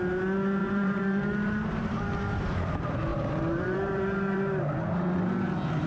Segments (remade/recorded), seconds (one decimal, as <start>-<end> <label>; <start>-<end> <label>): 0.0-0.6 recorded; 0.6-2.7 remade; 2.7-3.1 recorded; 3.1-4.6 remade; 4.6-5.9 recorded

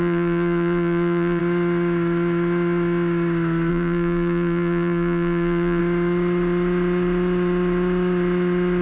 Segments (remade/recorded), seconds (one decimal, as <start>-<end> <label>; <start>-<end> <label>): 0.0-1.4 remade; 1.4-3.7 recorded; 3.7-5.8 remade; 5.8-8.8 recorded

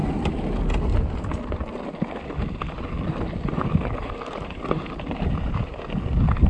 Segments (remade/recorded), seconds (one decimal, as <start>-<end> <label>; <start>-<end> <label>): 0.0-3.1 recorded; 3.1-5.7 remade; 5.7-6.5 recorded